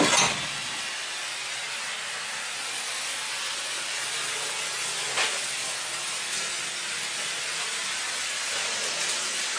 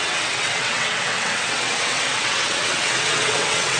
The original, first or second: first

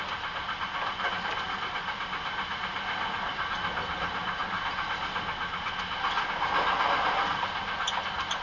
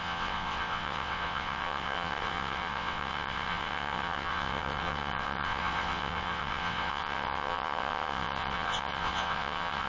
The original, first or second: first